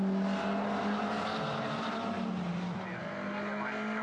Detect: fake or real real